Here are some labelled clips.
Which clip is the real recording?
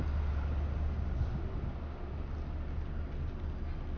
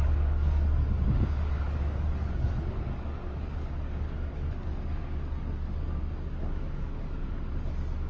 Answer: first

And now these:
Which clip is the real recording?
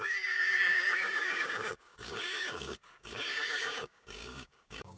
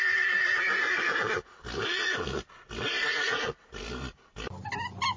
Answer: second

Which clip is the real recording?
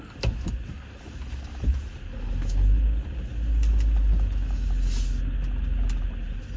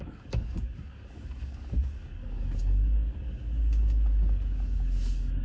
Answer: first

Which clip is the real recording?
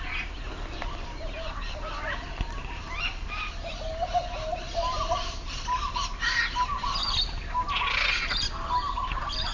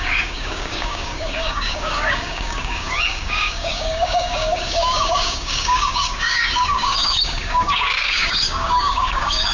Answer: first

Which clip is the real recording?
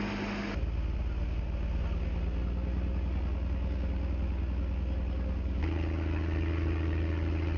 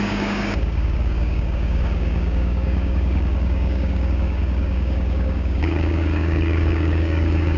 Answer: first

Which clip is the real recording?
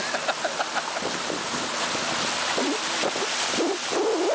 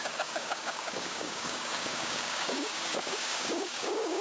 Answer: first